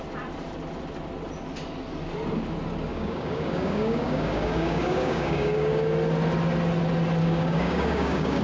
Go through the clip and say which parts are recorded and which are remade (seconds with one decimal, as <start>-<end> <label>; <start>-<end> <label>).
0.0-2.9 recorded; 2.9-5.8 remade; 5.8-7.2 recorded; 7.2-8.4 remade